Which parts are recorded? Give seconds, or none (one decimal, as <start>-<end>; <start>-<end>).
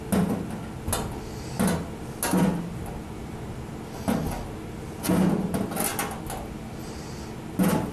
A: 0.0-7.9